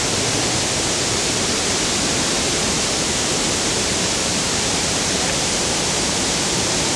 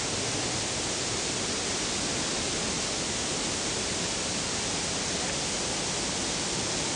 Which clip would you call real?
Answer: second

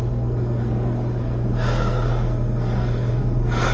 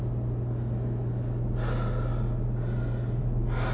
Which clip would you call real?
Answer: second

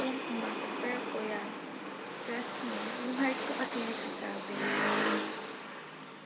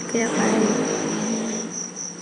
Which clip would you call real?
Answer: first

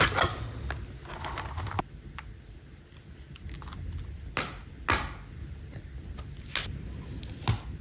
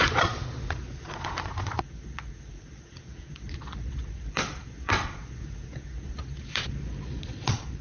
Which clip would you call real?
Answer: first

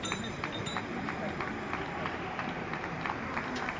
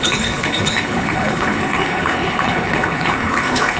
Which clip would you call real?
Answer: first